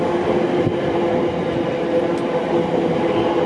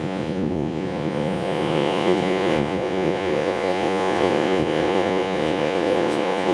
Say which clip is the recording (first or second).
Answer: first